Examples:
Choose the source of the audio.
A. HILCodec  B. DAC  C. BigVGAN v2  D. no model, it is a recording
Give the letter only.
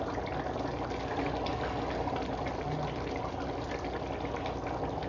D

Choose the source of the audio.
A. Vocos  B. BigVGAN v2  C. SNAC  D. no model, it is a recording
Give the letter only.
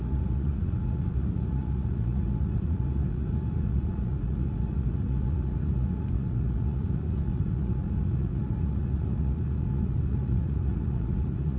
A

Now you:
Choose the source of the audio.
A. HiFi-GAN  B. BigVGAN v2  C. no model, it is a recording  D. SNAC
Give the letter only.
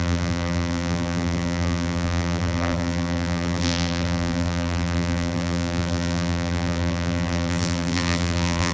B